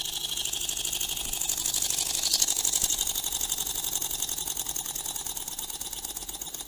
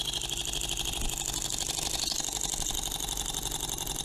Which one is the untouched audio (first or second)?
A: second